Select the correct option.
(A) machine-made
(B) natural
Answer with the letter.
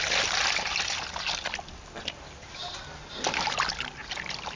B